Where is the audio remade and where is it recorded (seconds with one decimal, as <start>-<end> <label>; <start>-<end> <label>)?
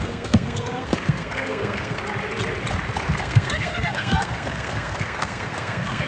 0.0-2.0 remade; 2.0-3.2 recorded; 3.2-6.1 remade